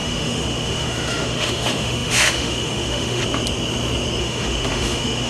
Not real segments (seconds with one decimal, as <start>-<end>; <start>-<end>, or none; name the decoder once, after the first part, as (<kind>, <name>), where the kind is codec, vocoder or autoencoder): 0.0-3.2 (autoencoder, DAC-VAE); 4.2-5.3